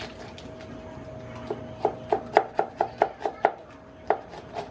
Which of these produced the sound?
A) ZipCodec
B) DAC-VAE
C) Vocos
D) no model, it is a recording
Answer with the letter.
D